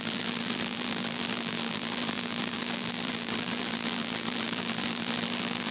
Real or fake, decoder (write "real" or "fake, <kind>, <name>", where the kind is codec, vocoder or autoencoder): fake, vocoder, BigVGAN v2